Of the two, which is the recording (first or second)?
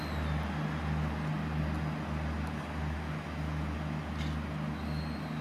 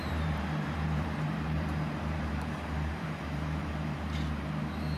first